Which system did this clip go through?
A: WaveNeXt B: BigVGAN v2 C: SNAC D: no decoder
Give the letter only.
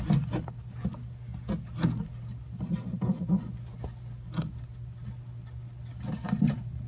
D